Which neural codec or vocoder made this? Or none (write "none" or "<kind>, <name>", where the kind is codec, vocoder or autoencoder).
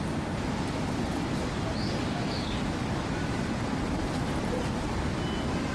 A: none